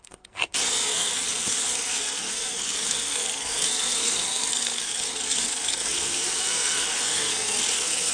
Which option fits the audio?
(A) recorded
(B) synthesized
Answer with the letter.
B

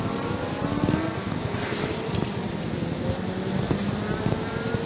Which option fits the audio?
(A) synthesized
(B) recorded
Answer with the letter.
B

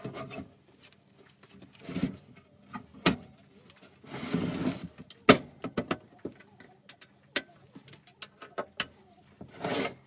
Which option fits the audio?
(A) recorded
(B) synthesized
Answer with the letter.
A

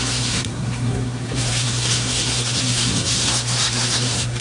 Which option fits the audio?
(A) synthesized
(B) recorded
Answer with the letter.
A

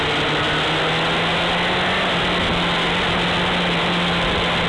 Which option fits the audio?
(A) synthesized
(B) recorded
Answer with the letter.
B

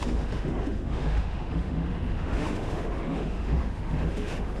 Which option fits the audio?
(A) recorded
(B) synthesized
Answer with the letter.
B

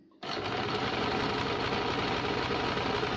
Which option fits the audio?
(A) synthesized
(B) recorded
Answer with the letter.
B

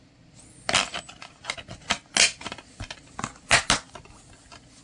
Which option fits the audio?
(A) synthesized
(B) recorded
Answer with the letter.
B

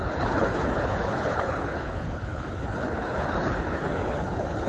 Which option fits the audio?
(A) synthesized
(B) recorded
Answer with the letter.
A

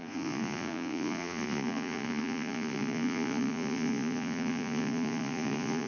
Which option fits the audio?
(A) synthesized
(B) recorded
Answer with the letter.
A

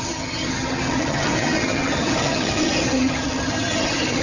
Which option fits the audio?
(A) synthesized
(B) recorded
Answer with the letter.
A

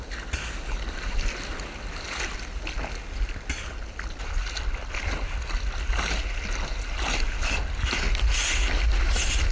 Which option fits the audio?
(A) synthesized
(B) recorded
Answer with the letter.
B